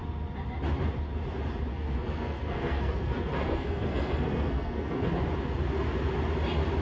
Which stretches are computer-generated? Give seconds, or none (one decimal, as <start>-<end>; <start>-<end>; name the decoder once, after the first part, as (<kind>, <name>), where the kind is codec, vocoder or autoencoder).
1.7-5.1 (codec, SNAC)